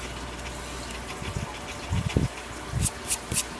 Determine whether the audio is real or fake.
real